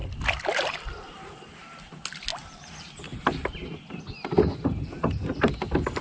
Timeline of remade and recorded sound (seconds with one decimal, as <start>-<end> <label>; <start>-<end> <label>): 0.0-2.3 recorded; 2.3-3.0 remade; 3.0-3.6 recorded; 3.6-5.4 remade; 5.4-6.0 recorded